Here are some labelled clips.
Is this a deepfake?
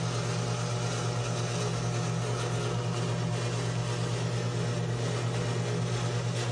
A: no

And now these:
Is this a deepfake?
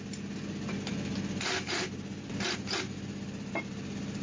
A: no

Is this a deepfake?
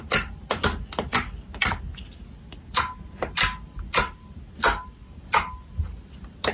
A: no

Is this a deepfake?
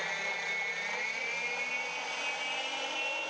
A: no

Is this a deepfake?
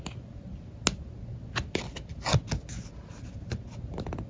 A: no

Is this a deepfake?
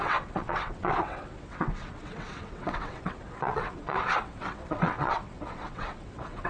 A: yes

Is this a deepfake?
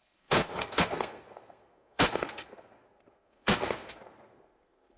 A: yes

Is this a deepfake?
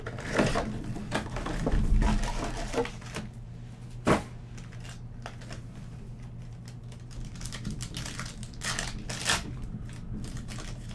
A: no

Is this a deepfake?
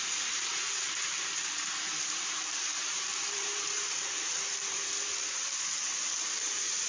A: yes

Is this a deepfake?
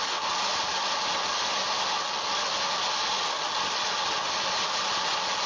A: no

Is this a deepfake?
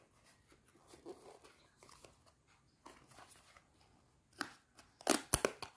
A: no